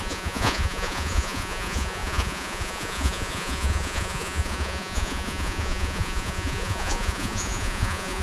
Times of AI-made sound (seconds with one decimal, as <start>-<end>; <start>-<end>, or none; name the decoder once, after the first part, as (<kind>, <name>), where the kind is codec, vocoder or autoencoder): 0.0-8.2 (vocoder, Vocos)